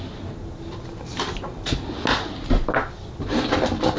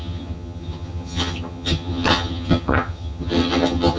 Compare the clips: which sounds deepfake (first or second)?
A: second